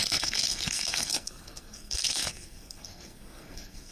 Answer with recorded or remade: remade